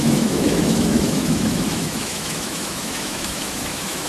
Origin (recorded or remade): remade